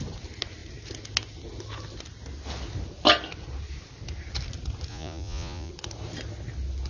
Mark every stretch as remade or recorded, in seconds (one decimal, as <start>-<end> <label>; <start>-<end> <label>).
0.0-4.9 recorded; 4.9-5.7 remade; 5.7-6.9 recorded